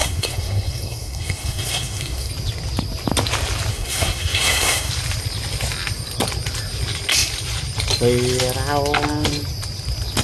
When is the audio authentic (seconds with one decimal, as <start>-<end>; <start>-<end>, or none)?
2.3-3.7; 4.9-10.2